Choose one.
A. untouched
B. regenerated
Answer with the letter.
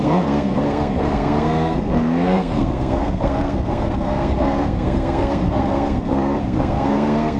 B